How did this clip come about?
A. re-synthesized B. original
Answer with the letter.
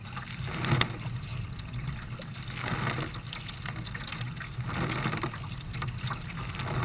B